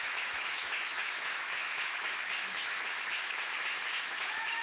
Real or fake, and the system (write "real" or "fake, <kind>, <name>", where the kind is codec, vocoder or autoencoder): fake, autoencoder, DAC-VAE